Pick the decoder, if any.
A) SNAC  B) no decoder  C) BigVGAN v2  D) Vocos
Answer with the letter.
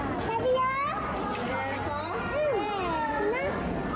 B